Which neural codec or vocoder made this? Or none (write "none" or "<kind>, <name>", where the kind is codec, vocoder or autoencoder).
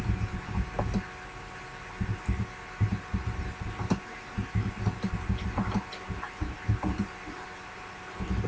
none